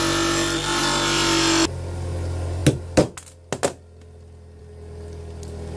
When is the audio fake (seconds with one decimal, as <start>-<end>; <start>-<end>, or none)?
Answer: none